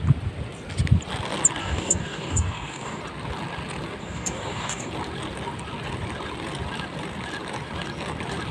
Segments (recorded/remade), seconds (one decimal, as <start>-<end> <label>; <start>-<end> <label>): 0.0-1.6 recorded; 1.6-3.0 remade; 3.0-4.0 recorded; 4.0-4.9 remade; 4.9-8.5 recorded